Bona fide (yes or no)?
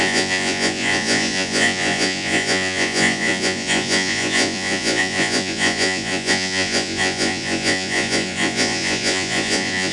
no